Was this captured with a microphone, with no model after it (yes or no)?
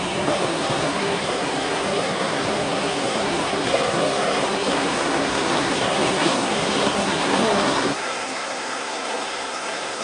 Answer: no